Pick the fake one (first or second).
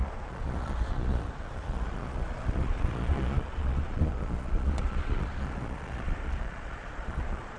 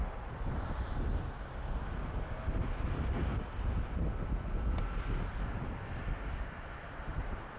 first